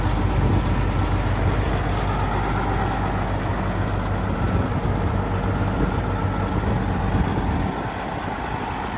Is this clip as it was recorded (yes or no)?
yes